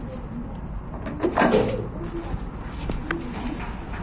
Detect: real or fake real